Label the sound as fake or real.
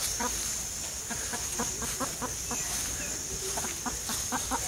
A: real